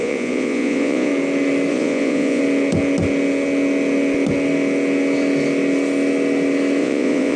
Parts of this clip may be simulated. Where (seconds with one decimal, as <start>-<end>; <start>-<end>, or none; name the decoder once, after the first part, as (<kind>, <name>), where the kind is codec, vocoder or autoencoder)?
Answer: 0.0-1.1 (vocoder, Vocos); 1.7-2.4; 6.8-7.4